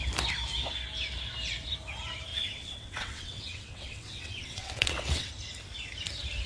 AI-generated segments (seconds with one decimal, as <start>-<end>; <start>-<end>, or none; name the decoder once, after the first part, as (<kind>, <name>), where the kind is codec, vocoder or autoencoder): 2.3-5.3 (vocoder, WaveNeXt)